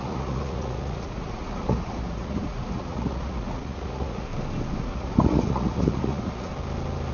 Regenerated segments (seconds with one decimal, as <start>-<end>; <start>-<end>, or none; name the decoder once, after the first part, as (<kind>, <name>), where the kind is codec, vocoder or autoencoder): 0.0-4.3 (vocoder, Vocos); 4.8-6.5